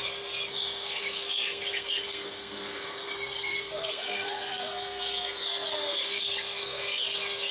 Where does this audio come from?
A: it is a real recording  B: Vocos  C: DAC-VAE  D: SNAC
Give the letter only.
D